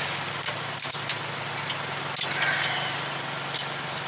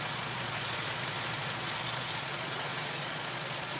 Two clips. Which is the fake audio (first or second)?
second